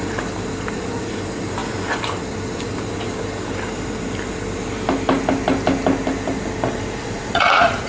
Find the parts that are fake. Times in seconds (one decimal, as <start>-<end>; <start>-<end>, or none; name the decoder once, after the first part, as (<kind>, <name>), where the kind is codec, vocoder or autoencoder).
7.0-7.9 (vocoder, Vocos)